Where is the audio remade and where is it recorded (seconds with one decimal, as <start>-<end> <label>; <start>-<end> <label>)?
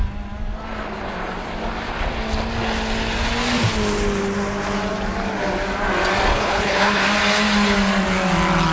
0.0-6.3 recorded; 6.3-7.0 remade; 7.0-8.7 recorded